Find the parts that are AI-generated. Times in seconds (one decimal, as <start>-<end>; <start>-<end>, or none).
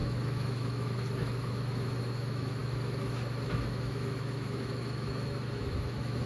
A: 0.0-6.3